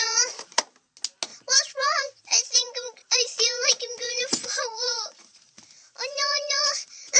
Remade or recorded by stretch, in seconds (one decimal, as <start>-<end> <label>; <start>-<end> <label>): 0.0-0.6 remade; 0.6-1.3 recorded; 1.3-5.6 remade; 5.6-6.1 recorded; 6.1-7.2 remade